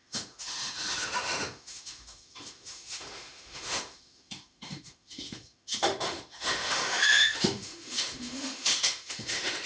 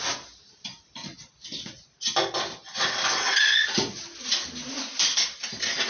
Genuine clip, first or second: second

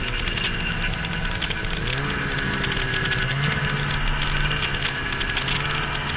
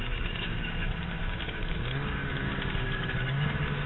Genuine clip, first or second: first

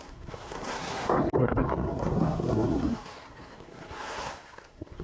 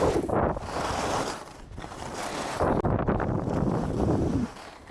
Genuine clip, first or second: second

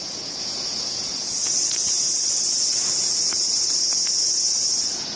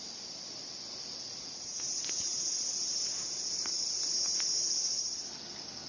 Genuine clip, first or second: second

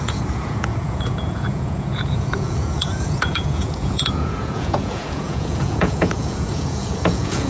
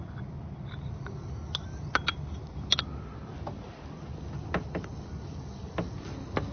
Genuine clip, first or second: second